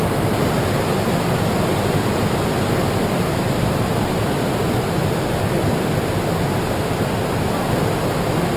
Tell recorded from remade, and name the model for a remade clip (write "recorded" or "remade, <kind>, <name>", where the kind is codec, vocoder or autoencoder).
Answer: recorded